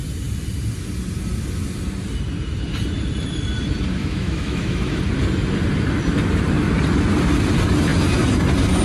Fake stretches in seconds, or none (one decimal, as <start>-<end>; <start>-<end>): 4.0-5.0